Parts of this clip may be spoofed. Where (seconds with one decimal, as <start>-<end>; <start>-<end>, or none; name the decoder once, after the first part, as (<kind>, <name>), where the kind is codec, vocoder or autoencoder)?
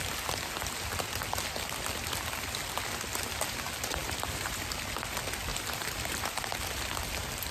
4.0-4.6 (vocoder, BigVGAN v2); 5.5-6.4